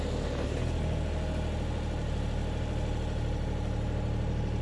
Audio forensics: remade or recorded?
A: recorded